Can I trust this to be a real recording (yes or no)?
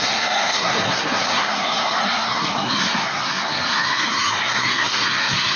no